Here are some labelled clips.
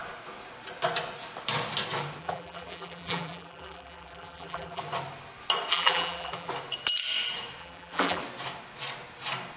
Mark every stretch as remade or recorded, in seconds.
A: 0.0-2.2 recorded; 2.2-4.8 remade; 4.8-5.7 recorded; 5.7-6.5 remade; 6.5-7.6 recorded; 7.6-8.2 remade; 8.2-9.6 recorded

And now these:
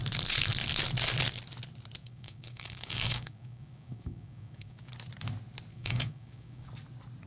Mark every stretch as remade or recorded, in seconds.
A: 0.0-2.0 recorded; 2.0-4.9 remade; 4.9-5.7 recorded; 5.7-6.7 remade; 6.7-7.3 recorded

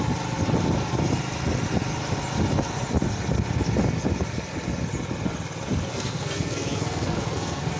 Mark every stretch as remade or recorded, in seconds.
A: 0.0-5.9 recorded; 5.9-7.8 remade